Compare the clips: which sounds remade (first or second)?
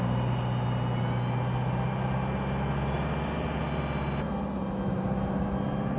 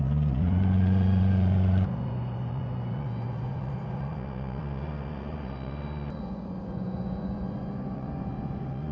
second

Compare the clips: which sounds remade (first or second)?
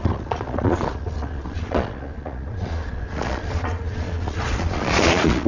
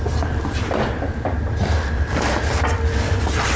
first